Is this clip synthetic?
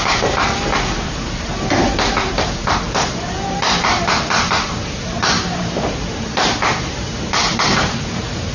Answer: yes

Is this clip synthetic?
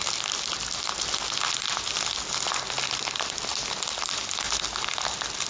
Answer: no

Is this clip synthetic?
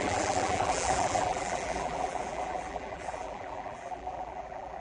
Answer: yes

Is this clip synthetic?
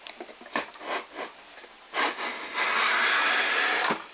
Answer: no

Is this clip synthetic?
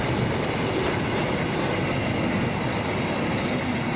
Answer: no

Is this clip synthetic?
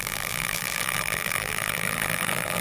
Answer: yes